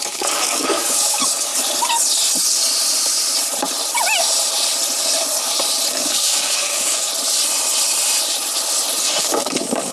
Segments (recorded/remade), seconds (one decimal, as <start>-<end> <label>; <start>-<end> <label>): 0.0-1.5 remade; 1.5-5.9 recorded; 5.9-7.1 remade; 7.1-9.2 recorded; 9.2-9.9 remade